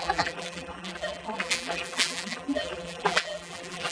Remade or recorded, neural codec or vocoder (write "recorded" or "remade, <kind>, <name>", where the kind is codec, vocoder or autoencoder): remade, vocoder, BigVGAN v2